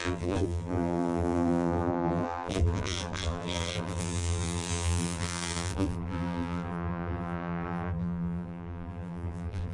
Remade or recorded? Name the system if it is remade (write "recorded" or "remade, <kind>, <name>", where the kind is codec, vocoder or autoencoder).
remade, vocoder, BigVGAN v2